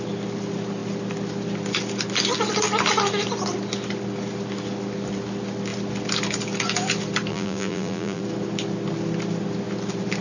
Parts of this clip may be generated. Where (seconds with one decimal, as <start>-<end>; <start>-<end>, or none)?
7.3-8.2